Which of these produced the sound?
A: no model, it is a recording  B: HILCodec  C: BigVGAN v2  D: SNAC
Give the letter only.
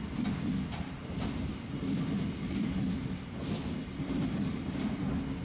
A